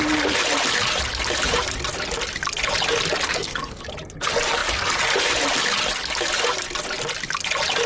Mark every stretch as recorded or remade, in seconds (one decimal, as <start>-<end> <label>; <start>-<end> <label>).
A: 0.0-3.3 recorded; 3.3-3.8 remade; 3.8-7.9 recorded